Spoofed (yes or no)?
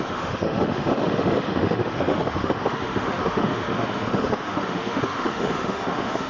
yes